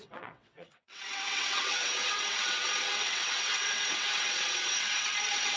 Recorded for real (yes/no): no